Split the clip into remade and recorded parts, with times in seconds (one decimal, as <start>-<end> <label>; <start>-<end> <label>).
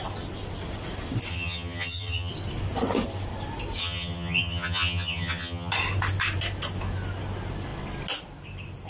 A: 0.0-1.3 recorded; 1.3-2.3 remade; 2.3-3.8 recorded; 3.8-5.7 remade; 5.7-8.9 recorded